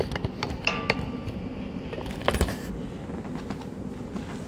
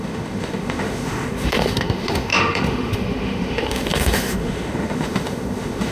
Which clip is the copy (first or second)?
second